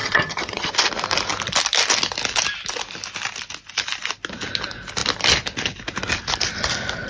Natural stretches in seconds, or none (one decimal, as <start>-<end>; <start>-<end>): 0.7-7.1